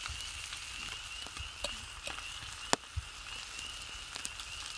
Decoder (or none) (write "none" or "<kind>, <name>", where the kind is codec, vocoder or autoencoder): none